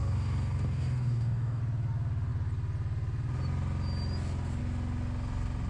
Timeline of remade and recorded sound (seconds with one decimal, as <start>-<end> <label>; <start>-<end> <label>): 0.0-1.6 remade; 1.6-5.7 recorded